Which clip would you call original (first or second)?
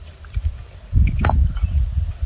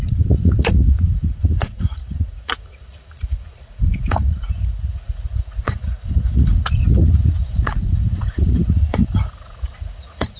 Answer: first